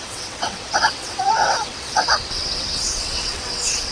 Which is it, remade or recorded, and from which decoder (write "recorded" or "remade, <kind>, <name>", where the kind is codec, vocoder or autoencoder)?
remade, vocoder, WaveNeXt